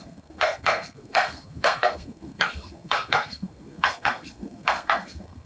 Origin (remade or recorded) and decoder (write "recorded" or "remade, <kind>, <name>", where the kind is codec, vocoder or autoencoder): remade, codec, SNAC